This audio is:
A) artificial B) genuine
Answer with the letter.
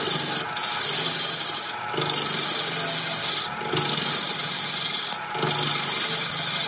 B